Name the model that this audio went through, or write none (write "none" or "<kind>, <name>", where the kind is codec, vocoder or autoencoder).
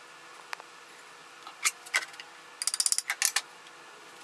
none